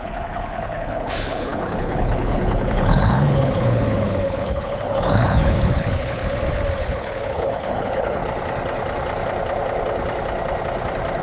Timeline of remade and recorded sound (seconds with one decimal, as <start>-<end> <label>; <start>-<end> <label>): 0.0-6.2 remade; 6.2-6.8 recorded; 6.8-8.2 remade; 8.2-11.2 recorded